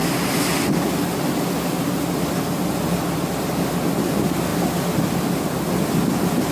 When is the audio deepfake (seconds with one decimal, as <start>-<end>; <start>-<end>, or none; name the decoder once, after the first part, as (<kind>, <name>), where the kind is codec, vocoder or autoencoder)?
none